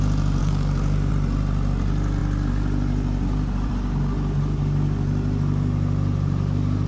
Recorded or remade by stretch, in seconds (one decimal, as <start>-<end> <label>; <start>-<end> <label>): 0.0-0.4 recorded; 0.4-1.1 remade; 1.1-6.9 recorded